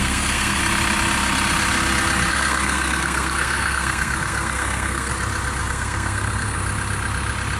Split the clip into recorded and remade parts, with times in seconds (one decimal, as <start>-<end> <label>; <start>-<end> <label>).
0.0-0.6 remade; 0.6-2.3 recorded; 2.3-5.1 remade; 5.1-5.6 recorded; 5.6-6.6 remade; 6.6-7.6 recorded